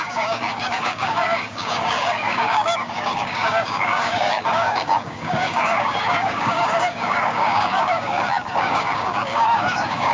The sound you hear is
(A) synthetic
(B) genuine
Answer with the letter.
A